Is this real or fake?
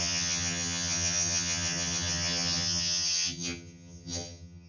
fake